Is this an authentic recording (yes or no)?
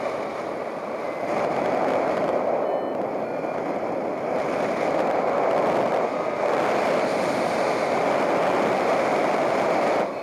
yes